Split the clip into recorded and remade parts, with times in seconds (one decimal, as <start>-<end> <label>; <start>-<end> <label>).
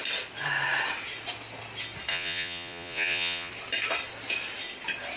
0.0-2.1 recorded; 2.1-3.5 remade; 3.5-5.2 recorded